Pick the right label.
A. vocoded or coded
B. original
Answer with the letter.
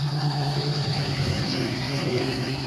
A